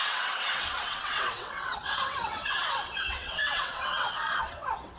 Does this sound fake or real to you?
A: fake